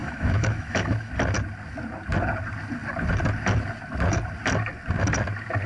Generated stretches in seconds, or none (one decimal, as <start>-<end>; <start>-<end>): 0.0-1.1